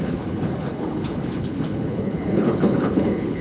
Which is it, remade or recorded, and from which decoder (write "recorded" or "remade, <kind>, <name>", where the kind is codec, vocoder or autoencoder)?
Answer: remade, codec, HILCodec